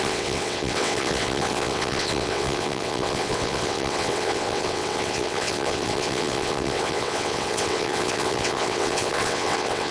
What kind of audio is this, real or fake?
fake